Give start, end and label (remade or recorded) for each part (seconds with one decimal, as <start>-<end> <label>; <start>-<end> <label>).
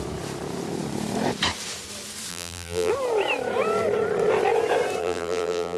0.0-2.3 recorded; 2.3-2.9 remade; 2.9-5.0 recorded; 5.0-5.8 remade